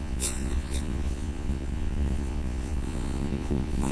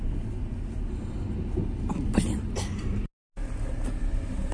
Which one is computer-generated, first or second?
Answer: first